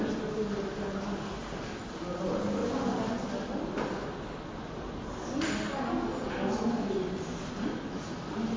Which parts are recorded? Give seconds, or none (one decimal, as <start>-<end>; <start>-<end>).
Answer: 0.0-1.4; 2.0-8.6